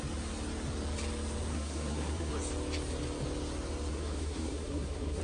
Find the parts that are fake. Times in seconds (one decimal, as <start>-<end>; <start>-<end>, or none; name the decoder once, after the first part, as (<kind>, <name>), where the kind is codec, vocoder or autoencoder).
1.5-2.3 (codec, SNAC); 3.9-5.2

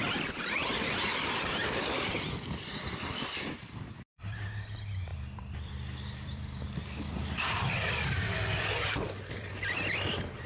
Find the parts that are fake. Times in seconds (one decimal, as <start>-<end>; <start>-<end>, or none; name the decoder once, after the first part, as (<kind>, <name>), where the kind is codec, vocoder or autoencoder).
0.0-10.5 (vocoder, BigVGAN v2)

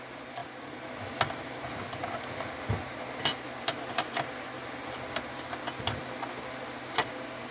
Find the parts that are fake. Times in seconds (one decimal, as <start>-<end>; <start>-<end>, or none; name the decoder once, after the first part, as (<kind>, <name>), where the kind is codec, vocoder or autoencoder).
none

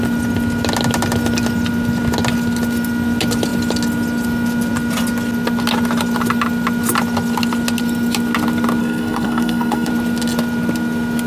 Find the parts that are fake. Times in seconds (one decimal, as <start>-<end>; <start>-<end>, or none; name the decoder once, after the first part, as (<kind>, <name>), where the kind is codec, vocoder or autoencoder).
8.8-9.9 (codec, SNAC)

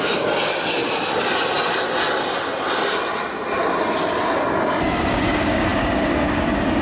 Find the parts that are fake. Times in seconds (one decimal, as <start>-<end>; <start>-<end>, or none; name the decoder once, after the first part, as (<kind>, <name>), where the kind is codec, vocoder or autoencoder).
0.0-0.8 (codec, DAC); 4.9-6.8

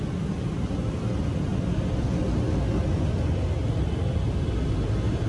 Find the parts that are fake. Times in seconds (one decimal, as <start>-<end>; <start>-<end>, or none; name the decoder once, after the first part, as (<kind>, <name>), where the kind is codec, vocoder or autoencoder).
none

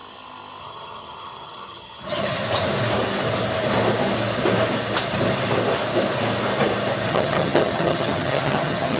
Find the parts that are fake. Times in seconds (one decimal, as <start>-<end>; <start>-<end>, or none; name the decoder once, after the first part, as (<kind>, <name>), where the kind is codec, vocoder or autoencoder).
0.6-2.4 (vocoder, HiFi-GAN); 7.1-9.0